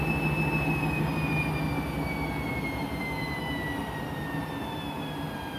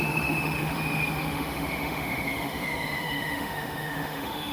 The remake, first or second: second